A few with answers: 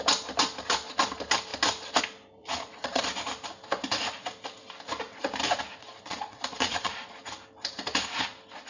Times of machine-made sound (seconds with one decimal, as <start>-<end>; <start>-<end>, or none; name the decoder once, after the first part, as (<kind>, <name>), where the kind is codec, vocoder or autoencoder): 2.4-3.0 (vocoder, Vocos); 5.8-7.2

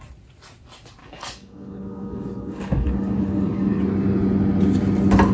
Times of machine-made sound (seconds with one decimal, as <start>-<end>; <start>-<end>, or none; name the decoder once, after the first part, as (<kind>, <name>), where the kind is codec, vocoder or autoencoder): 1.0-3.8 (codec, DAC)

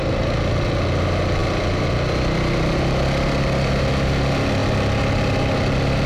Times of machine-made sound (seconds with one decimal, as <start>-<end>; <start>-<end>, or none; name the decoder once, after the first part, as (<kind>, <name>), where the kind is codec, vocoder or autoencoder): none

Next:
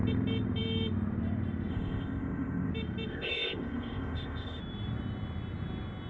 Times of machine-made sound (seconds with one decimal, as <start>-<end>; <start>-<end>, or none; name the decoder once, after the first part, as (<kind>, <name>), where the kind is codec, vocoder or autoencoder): 1.7-2.7 (codec, ZipCodec); 3.1-4.6

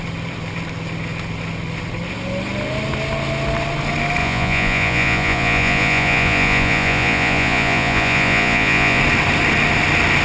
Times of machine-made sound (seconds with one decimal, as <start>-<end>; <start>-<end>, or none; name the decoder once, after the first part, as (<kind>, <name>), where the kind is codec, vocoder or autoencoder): 4.2-9.0 (vocoder, Vocos)

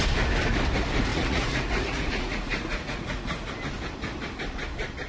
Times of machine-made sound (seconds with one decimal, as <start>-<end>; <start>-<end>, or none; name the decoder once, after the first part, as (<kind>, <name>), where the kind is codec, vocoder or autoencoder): 1.1-3.5 (vocoder, Vocos)